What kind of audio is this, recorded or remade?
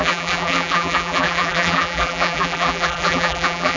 remade